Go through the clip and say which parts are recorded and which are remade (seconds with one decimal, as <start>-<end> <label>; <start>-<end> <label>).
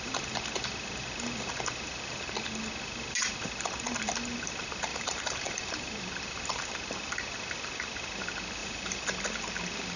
0.0-4.9 recorded; 4.9-6.0 remade; 6.0-8.6 recorded; 8.6-9.2 remade; 9.2-10.0 recorded